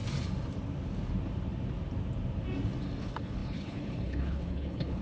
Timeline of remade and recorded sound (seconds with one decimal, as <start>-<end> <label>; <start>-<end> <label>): 0.0-3.0 recorded; 3.0-5.0 remade